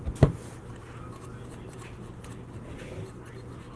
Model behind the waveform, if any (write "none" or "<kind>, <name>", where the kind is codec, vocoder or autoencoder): none